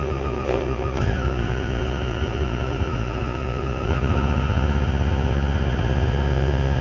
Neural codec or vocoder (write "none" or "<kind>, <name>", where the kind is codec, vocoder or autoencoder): vocoder, Vocos